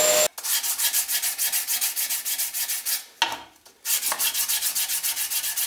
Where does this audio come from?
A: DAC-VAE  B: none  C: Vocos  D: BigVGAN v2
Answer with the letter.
B